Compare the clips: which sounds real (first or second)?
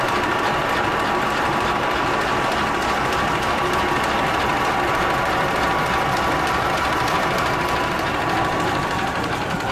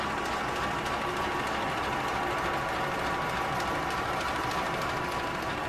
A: second